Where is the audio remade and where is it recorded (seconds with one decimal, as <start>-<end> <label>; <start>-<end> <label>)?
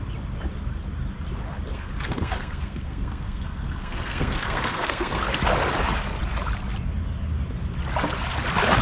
0.0-1.7 recorded; 1.7-5.2 remade; 5.2-8.8 recorded